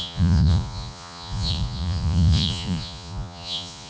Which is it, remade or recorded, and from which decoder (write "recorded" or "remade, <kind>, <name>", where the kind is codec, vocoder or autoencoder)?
remade, vocoder, Vocos